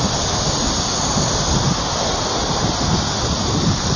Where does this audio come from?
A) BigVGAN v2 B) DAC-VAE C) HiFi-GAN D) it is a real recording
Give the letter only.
D